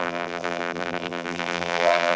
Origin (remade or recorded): remade